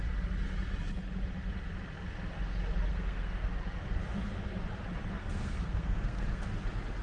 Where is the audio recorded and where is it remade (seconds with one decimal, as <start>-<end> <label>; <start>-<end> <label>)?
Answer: 0.0-2.9 recorded; 2.9-3.5 remade; 3.5-5.2 recorded; 5.2-6.4 remade; 6.4-7.0 recorded